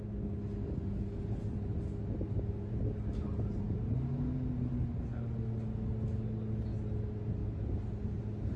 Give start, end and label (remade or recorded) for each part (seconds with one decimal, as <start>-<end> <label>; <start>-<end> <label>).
0.0-8.6 recorded